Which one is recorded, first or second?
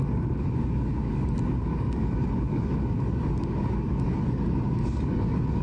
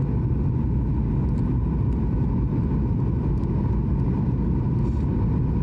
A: second